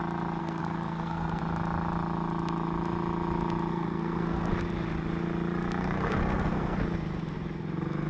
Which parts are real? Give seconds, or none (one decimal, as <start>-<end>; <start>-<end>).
0.0-0.4; 1.4-3.7; 4.5-5.8; 6.8-8.1